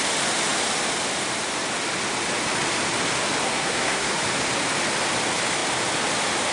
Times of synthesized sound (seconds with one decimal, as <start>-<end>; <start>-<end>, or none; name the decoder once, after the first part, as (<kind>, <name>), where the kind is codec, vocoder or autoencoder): 3.4-4.1 (codec, SNAC)